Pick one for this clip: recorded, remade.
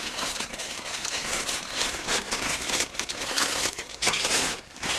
remade